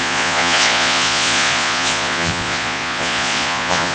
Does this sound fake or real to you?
fake